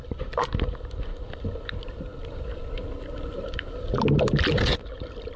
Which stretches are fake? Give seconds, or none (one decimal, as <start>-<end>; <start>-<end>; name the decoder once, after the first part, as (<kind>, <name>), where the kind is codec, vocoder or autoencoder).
none